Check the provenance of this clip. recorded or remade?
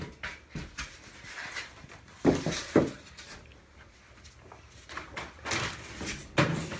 recorded